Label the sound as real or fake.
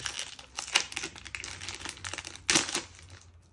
real